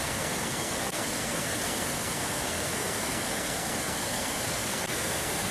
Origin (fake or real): fake